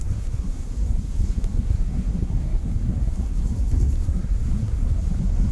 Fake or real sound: fake